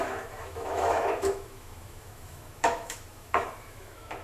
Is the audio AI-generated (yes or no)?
yes